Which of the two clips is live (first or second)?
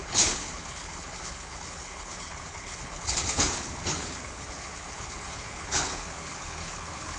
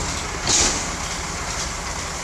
second